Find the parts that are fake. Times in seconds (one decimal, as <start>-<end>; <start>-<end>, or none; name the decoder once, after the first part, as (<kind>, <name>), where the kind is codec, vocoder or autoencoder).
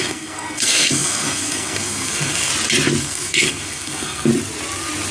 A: 0.0-2.5 (codec, SNAC); 3.0-4.3